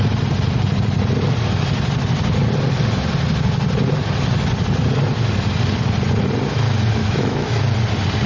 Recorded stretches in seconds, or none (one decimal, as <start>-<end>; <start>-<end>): 0.0-7.0; 7.6-8.3